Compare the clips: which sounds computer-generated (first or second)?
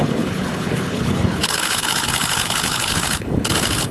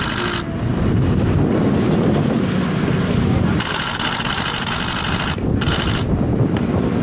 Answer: first